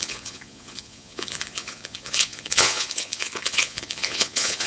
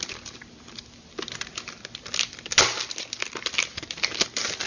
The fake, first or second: first